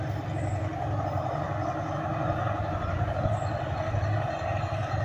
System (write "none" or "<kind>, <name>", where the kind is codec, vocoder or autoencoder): none